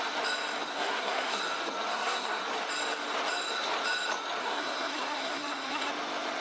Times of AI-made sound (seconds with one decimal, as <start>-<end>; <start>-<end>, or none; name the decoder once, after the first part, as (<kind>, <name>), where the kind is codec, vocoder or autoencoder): 0.7-1.4 (codec, SNAC); 1.9-2.4; 4.4-5.9